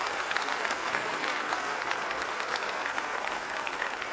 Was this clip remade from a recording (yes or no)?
yes